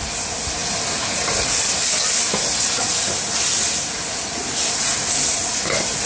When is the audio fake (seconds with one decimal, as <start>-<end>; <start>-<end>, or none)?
none